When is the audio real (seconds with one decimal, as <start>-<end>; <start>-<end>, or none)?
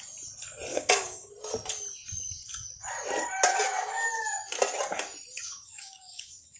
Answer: 0.0-0.7; 1.3-5.4